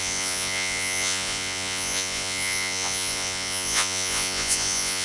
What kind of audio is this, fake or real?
fake